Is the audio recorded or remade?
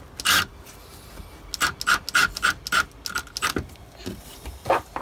recorded